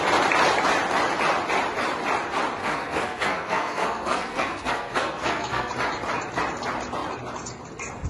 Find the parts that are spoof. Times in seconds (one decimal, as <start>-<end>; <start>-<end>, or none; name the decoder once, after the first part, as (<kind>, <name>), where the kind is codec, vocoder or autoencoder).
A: 2.6-5.7 (codec, SNAC)